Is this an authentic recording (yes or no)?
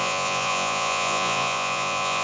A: no